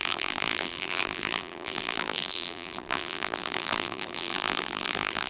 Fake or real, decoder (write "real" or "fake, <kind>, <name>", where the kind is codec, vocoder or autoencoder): fake, vocoder, BigVGAN v2